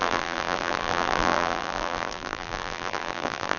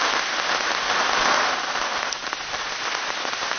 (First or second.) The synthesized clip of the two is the first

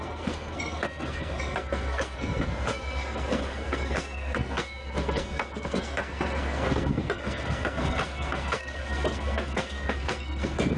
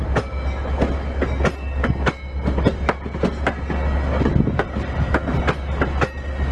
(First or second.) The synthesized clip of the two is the first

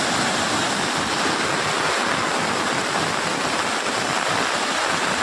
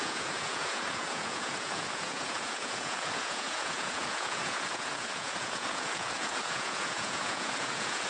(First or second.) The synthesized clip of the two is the second